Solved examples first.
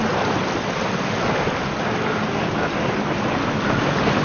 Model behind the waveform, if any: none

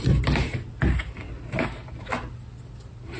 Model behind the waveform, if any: none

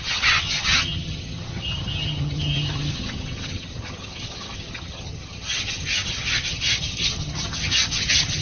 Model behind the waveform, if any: vocoder, HiFi-GAN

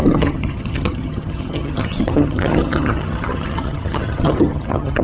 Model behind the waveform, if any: vocoder, HiFi-GAN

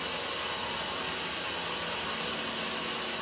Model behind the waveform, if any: none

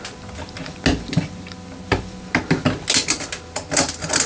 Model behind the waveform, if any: none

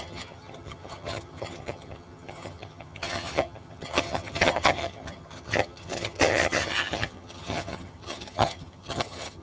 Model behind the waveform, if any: vocoder, HiFi-GAN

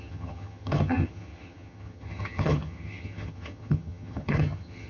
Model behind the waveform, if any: vocoder, HiFi-GAN